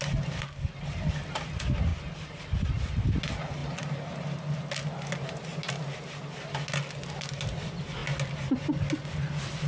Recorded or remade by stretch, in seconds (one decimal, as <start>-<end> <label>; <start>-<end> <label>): 0.0-9.7 recorded